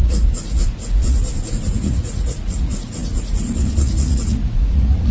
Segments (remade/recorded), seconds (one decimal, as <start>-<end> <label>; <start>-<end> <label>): 0.0-5.1 remade